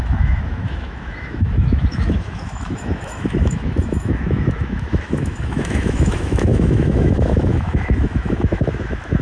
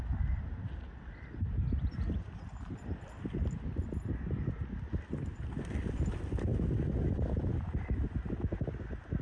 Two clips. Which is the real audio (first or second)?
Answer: second